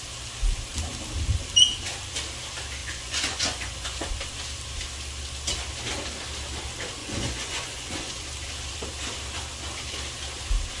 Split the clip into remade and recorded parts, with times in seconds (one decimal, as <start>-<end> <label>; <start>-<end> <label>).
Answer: 0.0-2.8 recorded; 2.8-4.1 remade; 4.1-7.0 recorded; 7.0-8.2 remade; 8.2-10.8 recorded